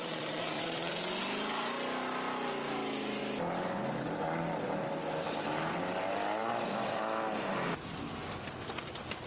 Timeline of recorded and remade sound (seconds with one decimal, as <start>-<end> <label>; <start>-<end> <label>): 0.0-0.9 remade; 0.9-9.3 recorded